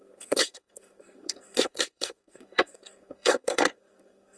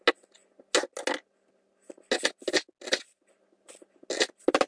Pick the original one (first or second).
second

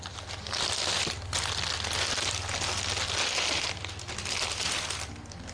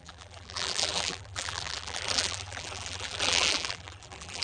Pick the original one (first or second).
first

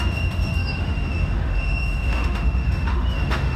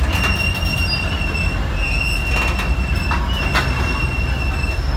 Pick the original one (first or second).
second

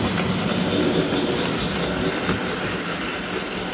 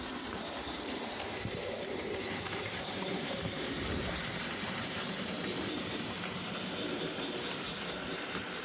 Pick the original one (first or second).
first